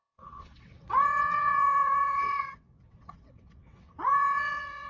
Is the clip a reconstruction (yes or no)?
yes